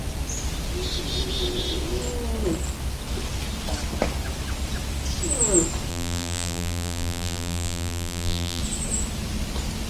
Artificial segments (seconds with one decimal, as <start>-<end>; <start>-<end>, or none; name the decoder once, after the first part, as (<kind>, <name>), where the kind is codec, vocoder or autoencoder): 5.9-8.6 (vocoder, BigVGAN v2)